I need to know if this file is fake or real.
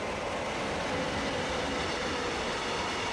real